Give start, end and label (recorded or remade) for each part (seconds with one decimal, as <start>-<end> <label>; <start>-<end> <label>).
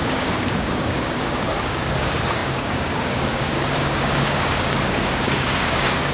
0.0-6.1 remade